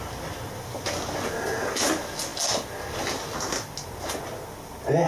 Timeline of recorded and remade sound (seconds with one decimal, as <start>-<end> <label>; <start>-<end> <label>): 0.0-5.1 recorded